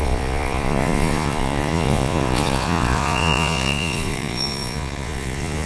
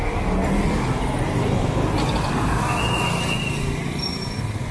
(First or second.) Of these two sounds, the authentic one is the second